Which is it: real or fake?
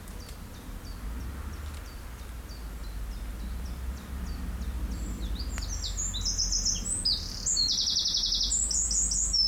real